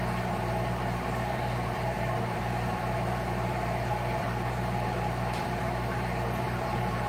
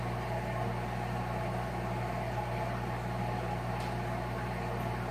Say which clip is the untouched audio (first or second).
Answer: second